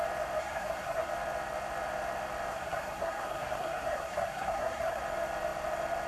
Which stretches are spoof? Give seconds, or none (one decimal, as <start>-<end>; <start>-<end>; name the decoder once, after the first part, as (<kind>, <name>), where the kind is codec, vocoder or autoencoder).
0.4-1.1 (codec, SNAC); 2.5-5.0